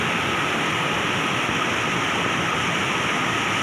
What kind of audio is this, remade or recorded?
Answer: recorded